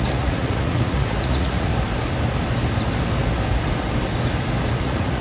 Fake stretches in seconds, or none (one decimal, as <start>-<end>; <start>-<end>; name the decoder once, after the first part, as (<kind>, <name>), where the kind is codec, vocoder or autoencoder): 0.0-1.7 (vocoder, Vocos); 4.7-5.2